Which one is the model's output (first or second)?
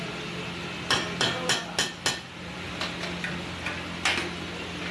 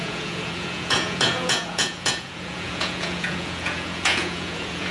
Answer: second